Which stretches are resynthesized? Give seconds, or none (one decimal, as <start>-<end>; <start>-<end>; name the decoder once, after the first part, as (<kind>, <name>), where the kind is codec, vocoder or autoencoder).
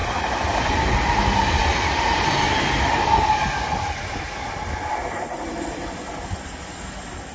0.0-0.8 (vocoder, BigVGAN v2); 1.6-6.0